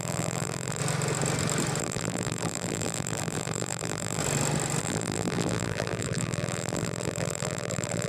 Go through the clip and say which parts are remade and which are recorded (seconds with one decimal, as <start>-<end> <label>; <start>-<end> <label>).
0.0-0.8 remade; 0.8-1.8 recorded; 1.8-4.2 remade; 4.2-4.8 recorded; 4.8-8.1 remade